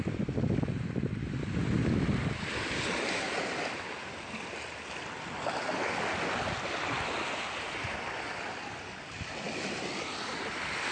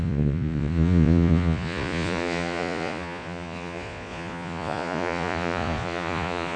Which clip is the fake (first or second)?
second